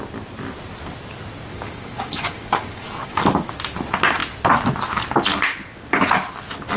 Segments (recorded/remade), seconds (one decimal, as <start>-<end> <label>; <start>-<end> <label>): 0.0-1.5 recorded; 1.5-3.2 remade; 3.2-6.8 recorded